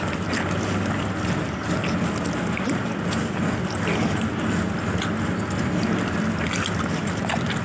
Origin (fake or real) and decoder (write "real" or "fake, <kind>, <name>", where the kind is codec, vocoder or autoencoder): real